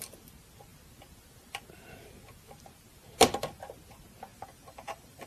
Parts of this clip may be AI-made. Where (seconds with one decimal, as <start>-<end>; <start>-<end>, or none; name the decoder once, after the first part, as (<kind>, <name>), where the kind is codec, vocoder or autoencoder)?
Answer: 4.3-5.3 (vocoder, BigVGAN v2)